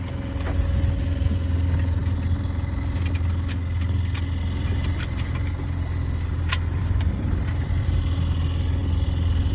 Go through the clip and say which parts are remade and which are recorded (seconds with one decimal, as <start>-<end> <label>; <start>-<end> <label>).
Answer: 0.0-9.5 recorded